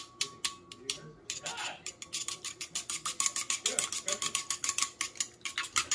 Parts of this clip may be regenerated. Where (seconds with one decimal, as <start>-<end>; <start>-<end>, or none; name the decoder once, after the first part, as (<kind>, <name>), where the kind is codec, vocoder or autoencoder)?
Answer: none